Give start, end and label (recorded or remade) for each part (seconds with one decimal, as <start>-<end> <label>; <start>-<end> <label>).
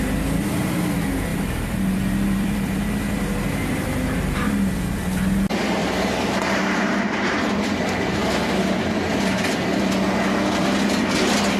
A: 0.0-1.3 recorded; 1.3-4.5 remade; 4.5-5.8 recorded; 5.8-8.6 remade; 8.6-11.6 recorded